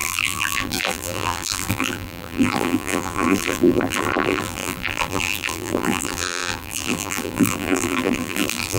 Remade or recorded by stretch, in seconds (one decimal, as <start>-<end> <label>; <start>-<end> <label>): 0.0-8.8 remade